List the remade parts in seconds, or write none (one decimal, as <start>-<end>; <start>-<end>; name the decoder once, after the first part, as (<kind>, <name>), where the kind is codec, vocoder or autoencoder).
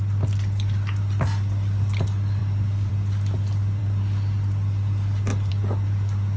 none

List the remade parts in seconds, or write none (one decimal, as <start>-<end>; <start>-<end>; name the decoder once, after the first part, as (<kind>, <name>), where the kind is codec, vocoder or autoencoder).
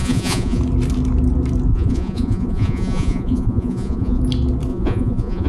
0.0-0.6 (vocoder, Vocos); 1.7-4.2; 4.7-5.5